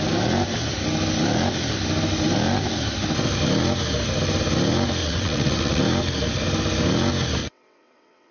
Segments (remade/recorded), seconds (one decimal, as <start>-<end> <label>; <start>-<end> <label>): 0.0-5.0 recorded; 5.0-5.8 remade; 5.8-7.4 recorded; 7.4-8.3 remade